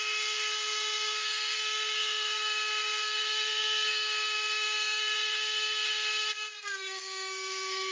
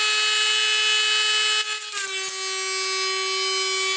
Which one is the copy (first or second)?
first